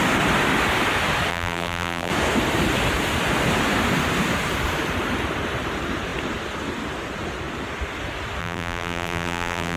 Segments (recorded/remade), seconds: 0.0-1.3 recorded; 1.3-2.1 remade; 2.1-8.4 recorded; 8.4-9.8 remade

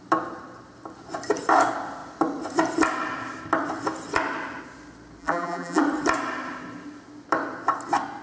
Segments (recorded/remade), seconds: 0.0-5.2 recorded; 5.2-5.8 remade; 5.8-8.2 recorded

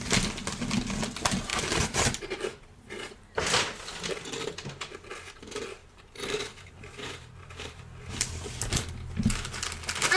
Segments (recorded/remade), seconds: 0.0-1.5 recorded; 1.5-3.4 remade; 3.4-5.8 recorded; 5.8-7.8 remade; 7.8-10.2 recorded

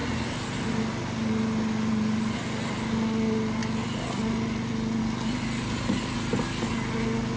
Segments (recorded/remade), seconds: 0.0-7.4 recorded

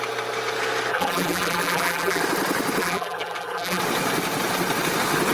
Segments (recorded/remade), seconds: 0.0-0.9 recorded; 0.9-2.2 remade; 2.2-2.8 recorded; 2.8-3.8 remade; 3.8-5.3 recorded

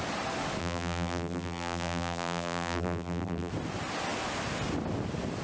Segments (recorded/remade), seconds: 0.0-0.6 recorded; 0.6-3.5 remade; 3.5-5.4 recorded

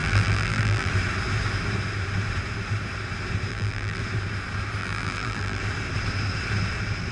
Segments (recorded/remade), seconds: 0.0-0.9 remade; 0.9-3.5 recorded; 3.5-4.0 remade; 4.0-4.8 recorded; 4.8-5.6 remade; 5.6-7.1 recorded